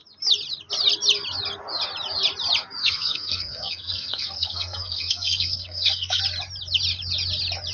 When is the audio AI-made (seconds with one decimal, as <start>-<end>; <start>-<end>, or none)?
2.8-6.2